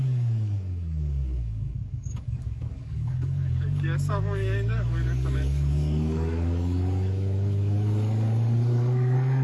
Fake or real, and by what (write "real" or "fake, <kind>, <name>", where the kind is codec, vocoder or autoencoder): fake, codec, DAC